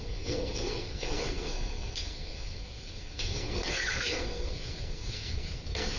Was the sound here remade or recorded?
remade